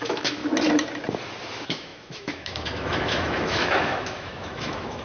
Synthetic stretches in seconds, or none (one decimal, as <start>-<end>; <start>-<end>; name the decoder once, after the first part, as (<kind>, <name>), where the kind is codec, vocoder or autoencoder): 0.0-0.4 (autoencoder, DAC-VAE); 1.5-5.0